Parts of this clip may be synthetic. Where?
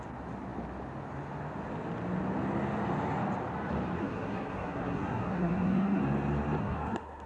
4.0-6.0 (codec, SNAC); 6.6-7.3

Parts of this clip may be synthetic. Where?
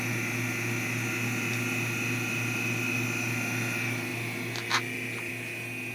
none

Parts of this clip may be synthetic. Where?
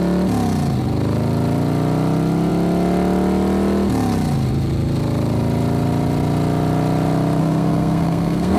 7.4-8.6 (codec, SNAC)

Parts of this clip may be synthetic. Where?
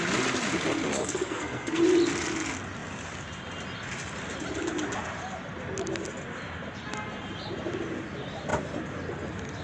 1.0-1.8 (codec, SNAC)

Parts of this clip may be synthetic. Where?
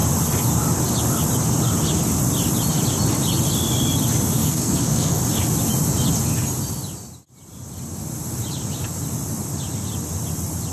4.4-5.2 (codec, SNAC)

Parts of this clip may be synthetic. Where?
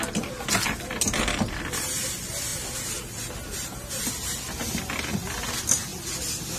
none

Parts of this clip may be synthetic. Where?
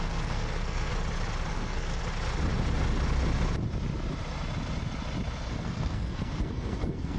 0.0-0.9 (codec, SNAC); 1.5-2.0; 5.5-7.2